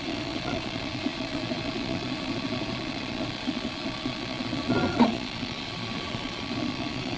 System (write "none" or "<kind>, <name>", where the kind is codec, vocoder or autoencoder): vocoder, Vocos